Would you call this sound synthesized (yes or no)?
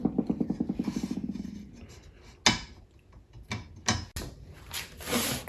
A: no